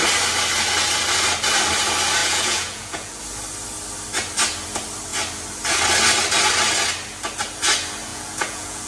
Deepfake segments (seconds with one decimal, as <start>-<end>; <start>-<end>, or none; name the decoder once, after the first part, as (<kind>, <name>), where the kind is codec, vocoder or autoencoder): 2.2-3.2 (vocoder, Vocos); 8.1-8.9